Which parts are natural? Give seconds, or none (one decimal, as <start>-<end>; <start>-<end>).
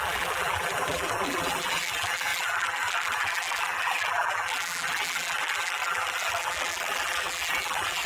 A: none